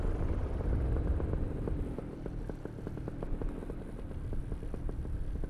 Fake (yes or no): no